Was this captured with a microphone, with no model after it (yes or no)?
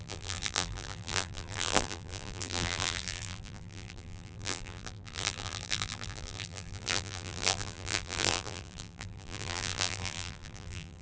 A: no